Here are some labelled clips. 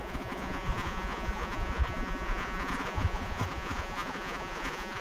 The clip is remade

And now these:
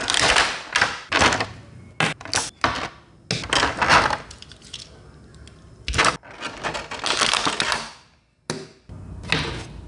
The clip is recorded